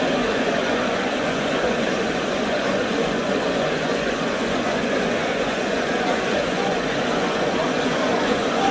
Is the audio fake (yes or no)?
yes